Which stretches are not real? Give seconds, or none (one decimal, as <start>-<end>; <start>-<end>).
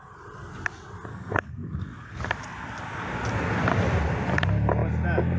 1.1-2.2